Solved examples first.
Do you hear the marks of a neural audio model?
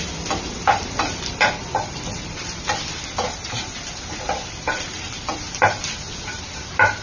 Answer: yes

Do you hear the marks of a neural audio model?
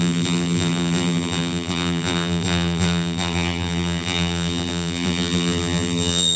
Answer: yes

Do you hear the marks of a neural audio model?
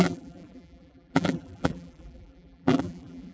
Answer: yes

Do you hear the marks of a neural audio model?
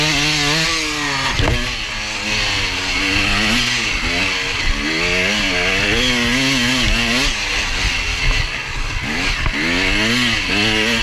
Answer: no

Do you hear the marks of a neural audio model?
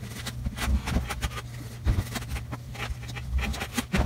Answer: no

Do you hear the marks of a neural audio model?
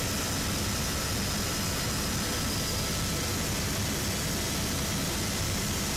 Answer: no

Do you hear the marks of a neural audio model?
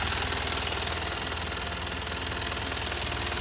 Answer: no